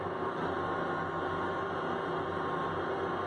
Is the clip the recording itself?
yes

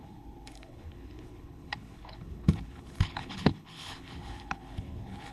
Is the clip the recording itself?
no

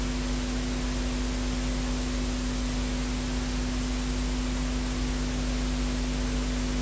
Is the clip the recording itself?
yes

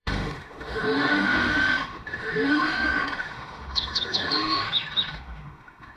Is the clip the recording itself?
no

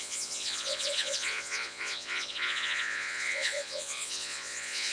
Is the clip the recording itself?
no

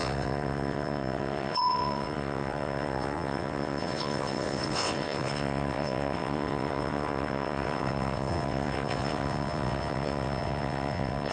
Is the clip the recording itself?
no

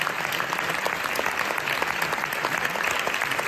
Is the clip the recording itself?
yes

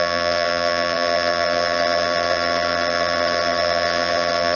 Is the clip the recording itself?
no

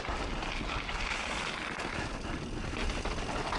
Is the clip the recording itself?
yes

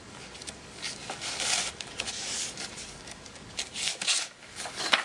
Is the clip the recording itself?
no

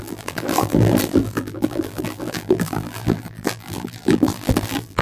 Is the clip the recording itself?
no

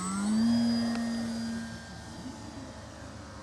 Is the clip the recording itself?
yes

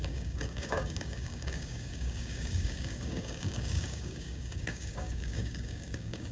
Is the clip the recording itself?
no